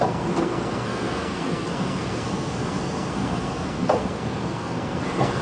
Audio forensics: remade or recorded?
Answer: remade